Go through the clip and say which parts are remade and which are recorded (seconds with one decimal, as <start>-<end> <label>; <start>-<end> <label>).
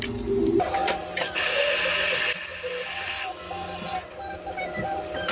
0.0-5.3 recorded